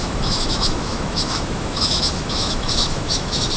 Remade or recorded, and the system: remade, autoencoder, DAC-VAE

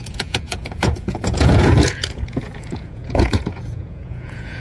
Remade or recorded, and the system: remade, vocoder, Vocos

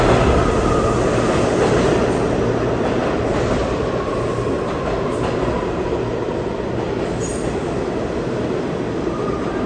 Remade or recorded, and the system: recorded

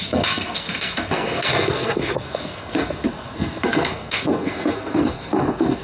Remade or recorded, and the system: remade, codec, SNAC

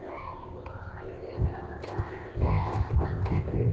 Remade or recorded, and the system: remade, codec, ZipCodec